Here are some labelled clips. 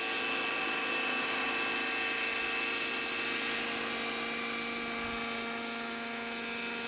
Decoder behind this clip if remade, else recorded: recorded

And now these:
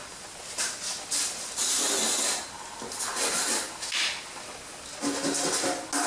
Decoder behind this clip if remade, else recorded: recorded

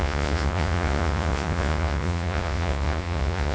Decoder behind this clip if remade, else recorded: remade, vocoder, Vocos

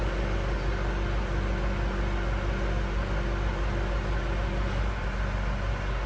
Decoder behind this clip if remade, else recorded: recorded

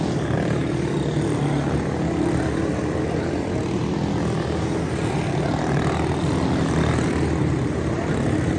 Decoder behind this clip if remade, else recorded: recorded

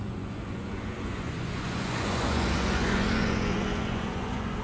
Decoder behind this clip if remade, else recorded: remade, vocoder, Vocos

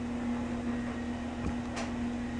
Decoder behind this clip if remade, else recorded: recorded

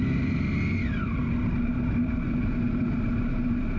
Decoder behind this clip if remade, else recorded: recorded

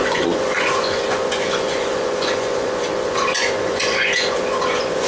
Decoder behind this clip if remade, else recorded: remade, vocoder, Vocos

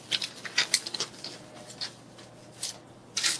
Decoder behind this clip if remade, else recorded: recorded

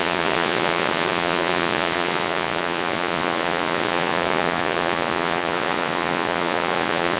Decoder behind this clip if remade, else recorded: remade, vocoder, Vocos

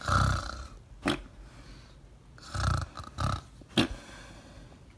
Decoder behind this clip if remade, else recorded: recorded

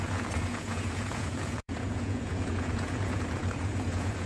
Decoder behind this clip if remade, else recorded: remade, vocoder, Vocos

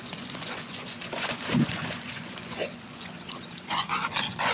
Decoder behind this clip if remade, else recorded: remade, vocoder, Vocos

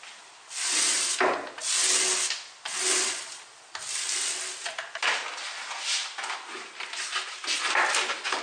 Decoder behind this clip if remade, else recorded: recorded